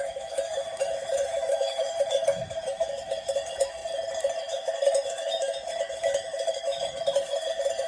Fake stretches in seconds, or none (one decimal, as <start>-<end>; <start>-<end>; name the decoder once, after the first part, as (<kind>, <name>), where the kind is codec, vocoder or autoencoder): 0.0-3.8 (autoencoder, DAC-VAE); 4.4-7.9